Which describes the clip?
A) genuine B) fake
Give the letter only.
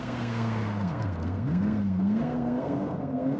B